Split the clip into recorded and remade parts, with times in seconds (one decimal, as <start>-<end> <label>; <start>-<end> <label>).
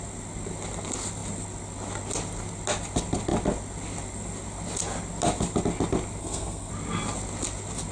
0.0-6.2 recorded; 6.2-6.7 remade; 6.7-7.9 recorded